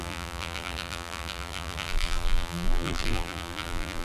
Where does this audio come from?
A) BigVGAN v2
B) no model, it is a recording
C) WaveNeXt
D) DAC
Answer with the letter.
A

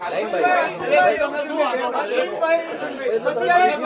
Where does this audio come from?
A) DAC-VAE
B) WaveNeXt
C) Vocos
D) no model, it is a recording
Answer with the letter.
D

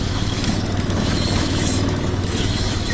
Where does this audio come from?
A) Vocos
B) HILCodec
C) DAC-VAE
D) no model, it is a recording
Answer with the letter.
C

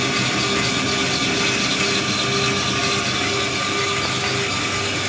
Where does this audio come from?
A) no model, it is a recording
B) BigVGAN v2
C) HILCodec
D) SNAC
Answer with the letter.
A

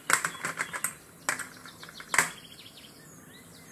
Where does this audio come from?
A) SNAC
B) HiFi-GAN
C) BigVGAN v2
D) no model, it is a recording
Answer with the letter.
D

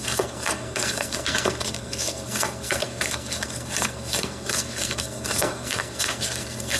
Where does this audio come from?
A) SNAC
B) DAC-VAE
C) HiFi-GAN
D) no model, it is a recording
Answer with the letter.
A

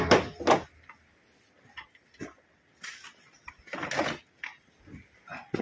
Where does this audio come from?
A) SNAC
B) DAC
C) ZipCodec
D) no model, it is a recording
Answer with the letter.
D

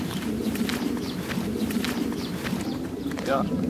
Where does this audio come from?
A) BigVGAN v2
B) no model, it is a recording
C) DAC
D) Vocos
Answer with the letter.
A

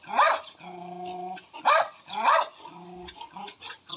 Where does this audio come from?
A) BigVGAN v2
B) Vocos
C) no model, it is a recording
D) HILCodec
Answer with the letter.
C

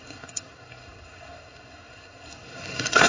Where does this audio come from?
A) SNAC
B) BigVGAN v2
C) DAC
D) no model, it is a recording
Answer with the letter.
A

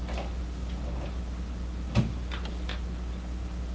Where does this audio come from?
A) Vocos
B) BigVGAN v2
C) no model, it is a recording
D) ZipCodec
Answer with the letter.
C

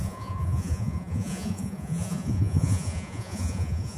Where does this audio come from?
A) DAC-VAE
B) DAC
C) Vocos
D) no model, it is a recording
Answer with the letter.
C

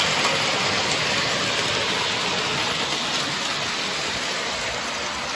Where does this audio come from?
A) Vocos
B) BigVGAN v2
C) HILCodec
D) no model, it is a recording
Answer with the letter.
D